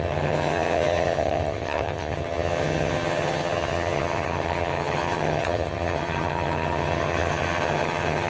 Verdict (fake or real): fake